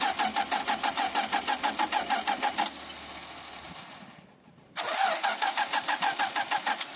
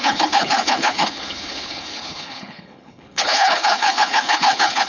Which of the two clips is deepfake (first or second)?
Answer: second